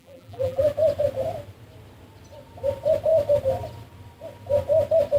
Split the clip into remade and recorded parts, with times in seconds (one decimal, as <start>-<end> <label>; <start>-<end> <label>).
0.0-0.7 remade; 0.7-5.2 recorded